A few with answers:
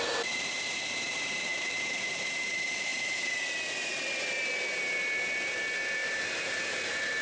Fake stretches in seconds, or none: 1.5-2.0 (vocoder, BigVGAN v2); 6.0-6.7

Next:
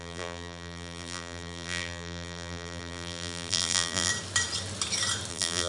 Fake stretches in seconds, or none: 0.0-4.1 (vocoder, BigVGAN v2); 5.3-5.7

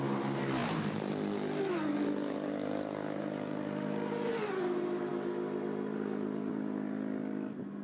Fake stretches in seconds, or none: 0.6-1.1 (vocoder, BigVGAN v2)

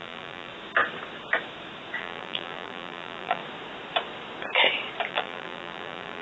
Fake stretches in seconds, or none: 0.0-0.5 (vocoder, BigVGAN v2); 2.0-3.4; 5.1-6.2

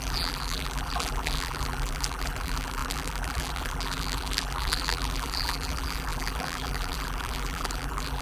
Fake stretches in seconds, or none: 0.0-8.2 (vocoder, BigVGAN v2)